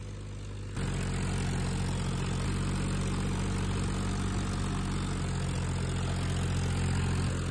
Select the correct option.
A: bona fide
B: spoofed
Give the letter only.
A